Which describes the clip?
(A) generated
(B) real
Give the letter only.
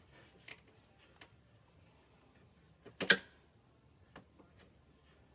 B